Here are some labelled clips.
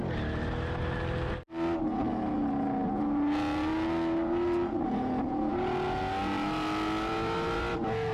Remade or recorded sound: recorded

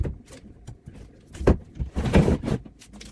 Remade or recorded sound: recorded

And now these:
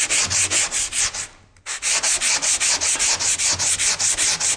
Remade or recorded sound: recorded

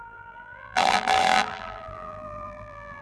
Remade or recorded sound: remade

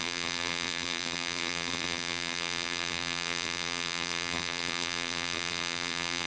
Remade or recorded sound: remade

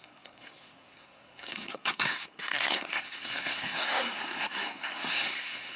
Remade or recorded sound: remade